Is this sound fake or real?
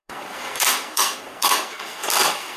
fake